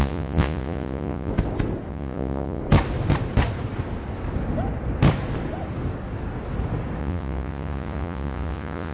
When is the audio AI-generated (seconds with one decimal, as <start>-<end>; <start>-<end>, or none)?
0.0-1.3; 1.9-2.6; 7.0-8.9